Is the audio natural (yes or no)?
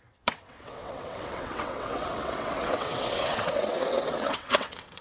no